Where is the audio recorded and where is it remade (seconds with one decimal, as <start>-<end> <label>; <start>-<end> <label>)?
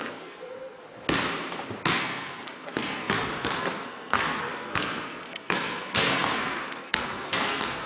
0.0-0.8 remade; 0.8-2.0 recorded; 2.0-7.9 remade